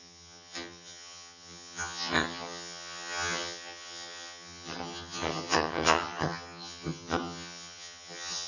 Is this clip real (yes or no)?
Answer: no